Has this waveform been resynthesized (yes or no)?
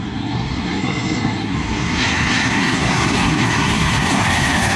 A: yes